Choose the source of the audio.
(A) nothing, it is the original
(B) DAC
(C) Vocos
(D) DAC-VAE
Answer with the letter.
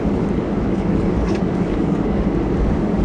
B